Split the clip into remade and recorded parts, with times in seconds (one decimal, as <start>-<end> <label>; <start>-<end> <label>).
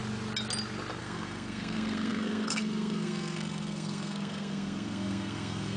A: 0.0-1.0 recorded; 1.0-5.8 remade